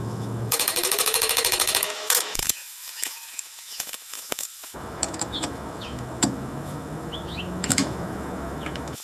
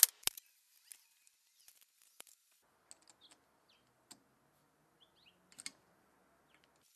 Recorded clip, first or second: second